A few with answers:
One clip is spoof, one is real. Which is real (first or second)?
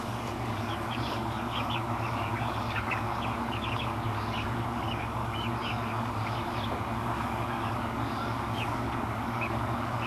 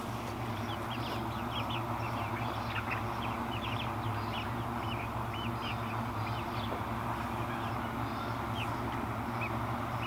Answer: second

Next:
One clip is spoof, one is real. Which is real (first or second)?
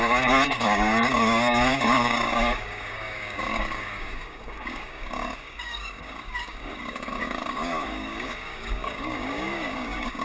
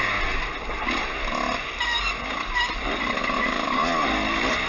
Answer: second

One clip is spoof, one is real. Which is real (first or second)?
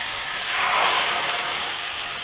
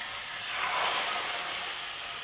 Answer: second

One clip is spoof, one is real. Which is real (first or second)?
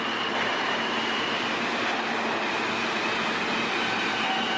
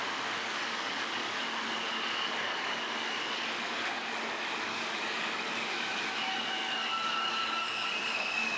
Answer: first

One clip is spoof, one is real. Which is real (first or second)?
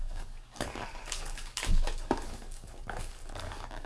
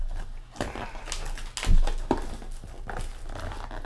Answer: second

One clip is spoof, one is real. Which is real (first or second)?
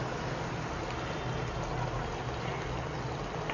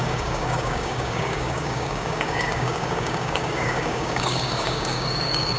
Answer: first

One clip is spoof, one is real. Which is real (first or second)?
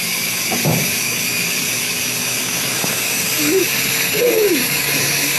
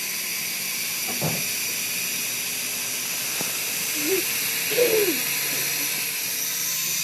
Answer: second